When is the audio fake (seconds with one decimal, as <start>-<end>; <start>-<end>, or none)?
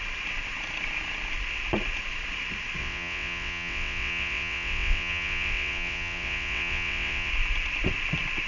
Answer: 2.8-7.3